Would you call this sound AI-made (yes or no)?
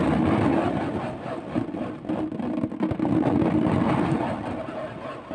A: no